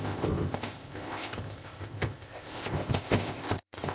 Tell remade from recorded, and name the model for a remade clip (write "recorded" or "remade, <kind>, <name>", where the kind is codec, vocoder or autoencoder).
remade, codec, ZipCodec